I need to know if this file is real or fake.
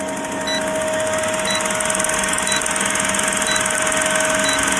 real